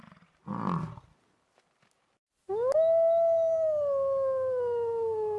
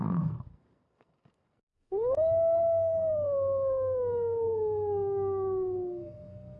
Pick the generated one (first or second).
second